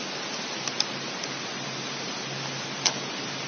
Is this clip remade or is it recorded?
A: recorded